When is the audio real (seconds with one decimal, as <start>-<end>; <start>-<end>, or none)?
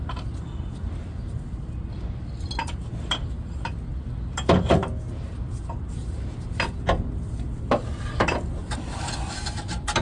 0.0-10.0